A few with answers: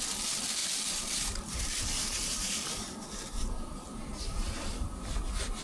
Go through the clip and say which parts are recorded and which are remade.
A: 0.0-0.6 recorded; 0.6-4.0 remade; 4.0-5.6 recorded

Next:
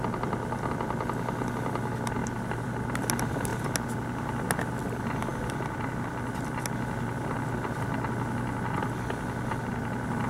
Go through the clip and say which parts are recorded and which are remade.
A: 0.0-2.2 recorded; 2.2-2.7 remade; 2.7-10.3 recorded

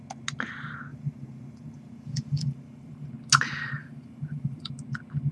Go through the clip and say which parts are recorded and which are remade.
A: 0.0-0.9 recorded; 0.9-3.1 remade; 3.1-3.8 recorded; 3.8-4.7 remade; 4.7-5.3 recorded

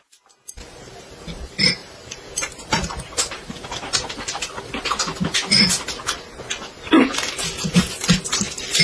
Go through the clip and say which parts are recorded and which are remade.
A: 0.0-1.8 recorded; 1.8-5.0 remade; 5.0-8.8 recorded